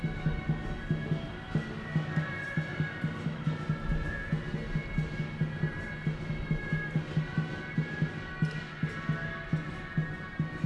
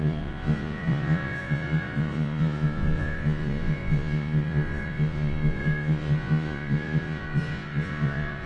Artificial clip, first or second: second